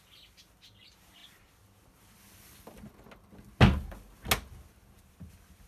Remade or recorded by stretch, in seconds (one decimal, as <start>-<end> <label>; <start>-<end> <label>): 0.0-5.7 recorded